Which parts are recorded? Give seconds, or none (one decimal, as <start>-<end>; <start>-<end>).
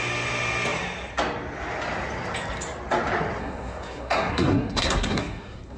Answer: 0.0-3.4